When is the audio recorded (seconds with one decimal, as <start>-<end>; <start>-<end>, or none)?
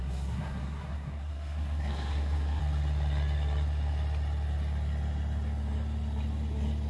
2.6-6.9